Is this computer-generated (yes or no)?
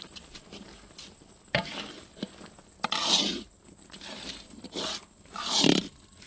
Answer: no